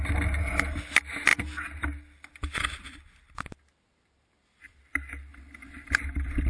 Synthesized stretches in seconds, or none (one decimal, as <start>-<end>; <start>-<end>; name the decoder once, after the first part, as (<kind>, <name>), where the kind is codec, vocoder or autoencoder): none